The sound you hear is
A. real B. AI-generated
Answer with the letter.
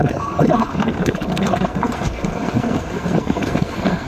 B